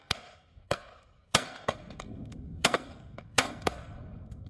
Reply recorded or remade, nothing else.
remade